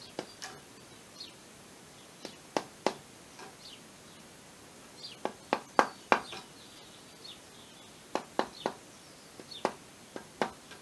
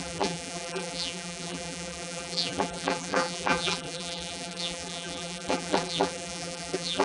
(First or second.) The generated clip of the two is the second